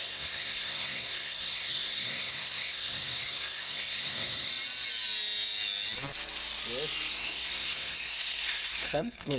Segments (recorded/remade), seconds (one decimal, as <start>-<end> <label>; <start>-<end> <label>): 0.0-4.5 remade; 4.5-7.1 recorded; 7.1-9.4 remade